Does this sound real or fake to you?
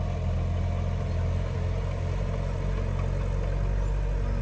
real